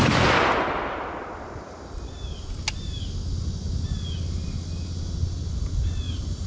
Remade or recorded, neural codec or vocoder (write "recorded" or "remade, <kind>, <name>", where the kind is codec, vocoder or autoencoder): recorded